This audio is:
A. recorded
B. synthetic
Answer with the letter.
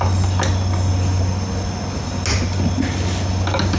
A